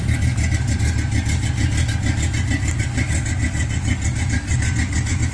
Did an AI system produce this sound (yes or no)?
no